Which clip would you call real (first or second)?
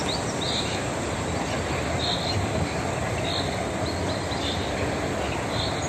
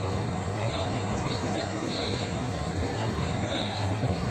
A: first